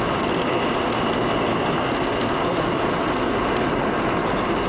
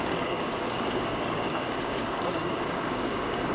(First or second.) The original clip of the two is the first